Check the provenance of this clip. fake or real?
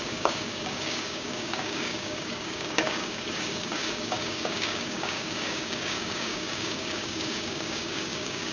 fake